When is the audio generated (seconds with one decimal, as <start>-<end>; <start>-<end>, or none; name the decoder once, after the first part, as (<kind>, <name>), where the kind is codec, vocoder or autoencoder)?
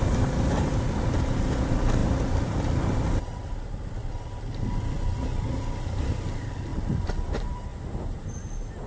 0.0-4.0 (vocoder, BigVGAN v2); 5.1-6.7; 7.3-7.7